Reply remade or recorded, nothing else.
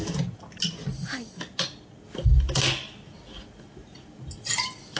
recorded